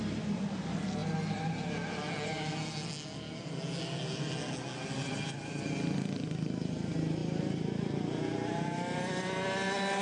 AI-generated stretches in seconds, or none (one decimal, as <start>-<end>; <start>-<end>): 7.2-7.9